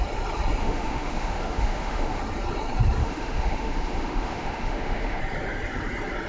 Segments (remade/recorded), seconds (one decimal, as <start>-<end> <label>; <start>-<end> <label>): 0.0-0.6 recorded; 0.6-2.2 remade; 2.2-3.0 recorded; 3.0-5.2 remade; 5.2-6.3 recorded